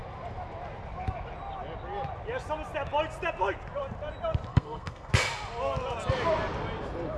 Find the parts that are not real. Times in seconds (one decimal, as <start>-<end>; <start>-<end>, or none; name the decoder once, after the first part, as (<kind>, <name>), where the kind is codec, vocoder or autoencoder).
4.5-5.1 (codec, SNAC)